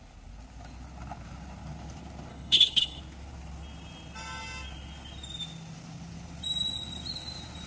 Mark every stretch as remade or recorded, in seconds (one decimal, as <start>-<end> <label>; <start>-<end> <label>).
0.0-2.3 recorded; 2.3-3.0 remade; 3.0-7.7 recorded